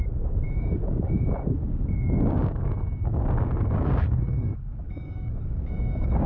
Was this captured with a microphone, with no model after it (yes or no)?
no